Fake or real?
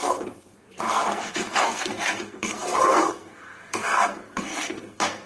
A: fake